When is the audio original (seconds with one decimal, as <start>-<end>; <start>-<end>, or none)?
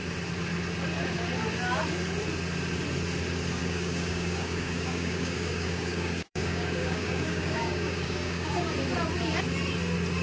0.0-3.6; 8.7-10.2